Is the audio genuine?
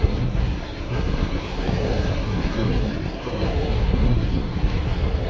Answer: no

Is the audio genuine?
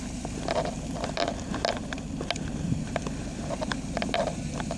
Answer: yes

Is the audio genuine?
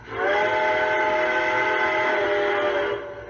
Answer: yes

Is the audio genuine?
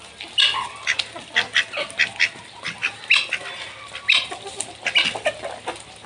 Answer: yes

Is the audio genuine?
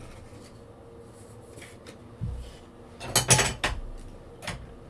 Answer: yes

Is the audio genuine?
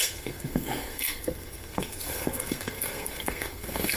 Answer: no